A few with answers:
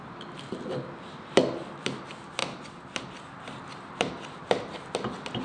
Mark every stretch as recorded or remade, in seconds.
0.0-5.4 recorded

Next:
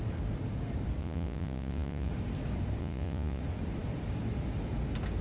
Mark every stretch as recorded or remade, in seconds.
0.0-1.0 recorded; 1.0-2.1 remade; 2.1-2.8 recorded; 2.8-3.4 remade; 3.4-5.2 recorded

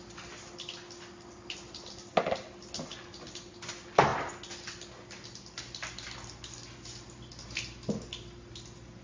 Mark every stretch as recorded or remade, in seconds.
0.0-9.0 recorded